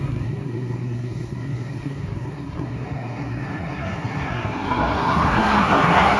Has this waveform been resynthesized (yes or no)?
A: yes